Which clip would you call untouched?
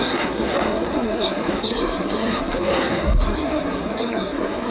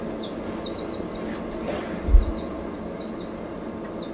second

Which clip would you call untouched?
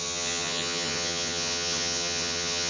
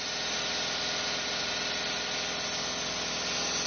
second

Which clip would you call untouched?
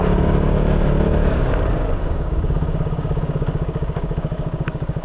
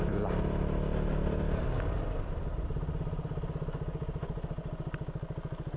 second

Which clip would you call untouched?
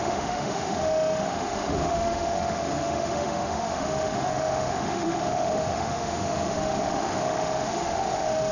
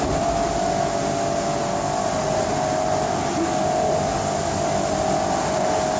second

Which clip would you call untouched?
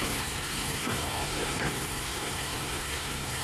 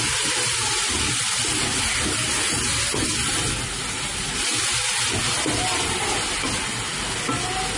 second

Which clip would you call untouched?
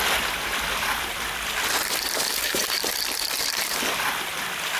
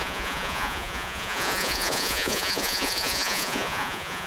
first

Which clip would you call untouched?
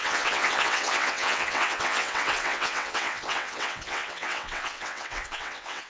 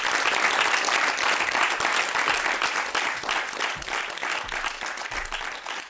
second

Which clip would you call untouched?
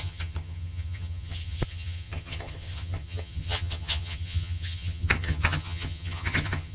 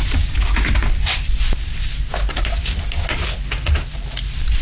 second